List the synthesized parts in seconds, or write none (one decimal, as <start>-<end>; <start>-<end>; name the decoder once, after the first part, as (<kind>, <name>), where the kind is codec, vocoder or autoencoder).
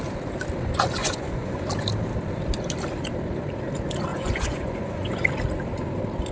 1.0-1.6 (vocoder, Vocos); 4.1-5.3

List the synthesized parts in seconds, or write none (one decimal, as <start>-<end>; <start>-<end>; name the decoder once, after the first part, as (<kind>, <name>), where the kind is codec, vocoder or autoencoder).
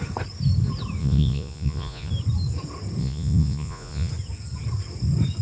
1.0-2.1 (vocoder, Vocos); 3.0-4.1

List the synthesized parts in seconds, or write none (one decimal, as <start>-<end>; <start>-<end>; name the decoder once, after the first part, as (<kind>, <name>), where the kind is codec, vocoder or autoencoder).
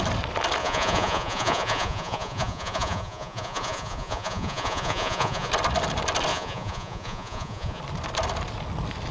0.6-5.5 (vocoder, Vocos); 6.3-7.8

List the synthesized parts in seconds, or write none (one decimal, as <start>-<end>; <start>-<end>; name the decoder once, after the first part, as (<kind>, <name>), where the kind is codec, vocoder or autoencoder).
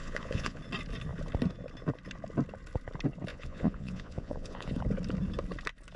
0.0-0.6 (vocoder, Vocos); 3.3-4.8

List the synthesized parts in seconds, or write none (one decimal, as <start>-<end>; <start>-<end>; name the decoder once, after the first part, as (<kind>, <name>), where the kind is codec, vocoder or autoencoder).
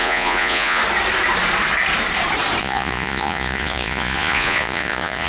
0.0-0.8 (vocoder, Vocos); 2.6-5.3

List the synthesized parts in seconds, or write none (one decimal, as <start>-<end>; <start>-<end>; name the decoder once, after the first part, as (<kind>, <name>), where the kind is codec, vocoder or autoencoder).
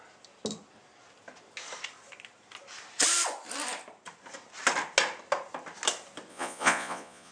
6.3-7.3 (vocoder, Vocos)